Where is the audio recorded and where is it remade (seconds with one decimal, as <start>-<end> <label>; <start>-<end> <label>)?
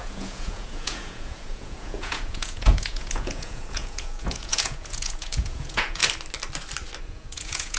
0.0-6.0 remade; 6.0-7.0 recorded; 7.0-7.8 remade